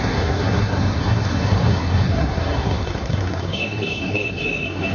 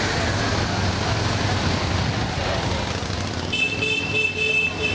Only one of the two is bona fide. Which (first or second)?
second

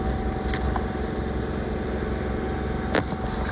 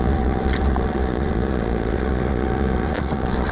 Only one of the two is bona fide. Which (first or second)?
first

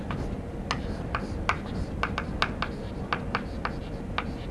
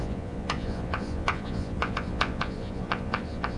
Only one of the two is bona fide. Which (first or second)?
first